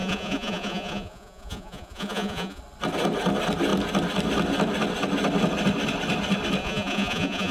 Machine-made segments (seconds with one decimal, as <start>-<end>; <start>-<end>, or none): 0.0-2.6; 6.6-7.5